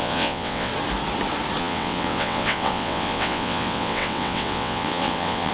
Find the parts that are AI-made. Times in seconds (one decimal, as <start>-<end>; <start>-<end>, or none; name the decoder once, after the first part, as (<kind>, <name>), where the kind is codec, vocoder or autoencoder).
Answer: 0.0-0.7 (vocoder, WaveNeXt); 1.6-5.5